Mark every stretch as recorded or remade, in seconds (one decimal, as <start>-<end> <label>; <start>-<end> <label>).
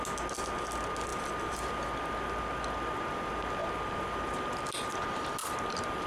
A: 0.0-1.1 recorded; 1.1-1.7 remade; 1.7-5.4 recorded; 5.4-6.1 remade